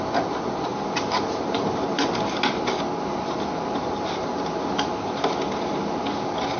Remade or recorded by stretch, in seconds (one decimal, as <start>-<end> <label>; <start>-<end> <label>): 0.0-6.6 recorded